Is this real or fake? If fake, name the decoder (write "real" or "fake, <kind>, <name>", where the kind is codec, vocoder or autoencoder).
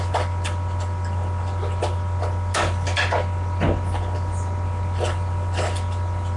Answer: real